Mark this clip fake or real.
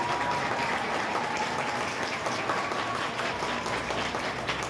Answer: real